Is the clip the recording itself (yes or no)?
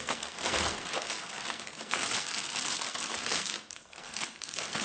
no